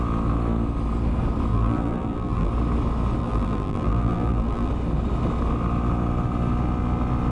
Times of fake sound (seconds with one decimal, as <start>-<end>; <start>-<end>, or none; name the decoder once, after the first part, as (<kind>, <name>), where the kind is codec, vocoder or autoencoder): 1.5-2.5 (vocoder, BigVGAN v2); 3.2-4.7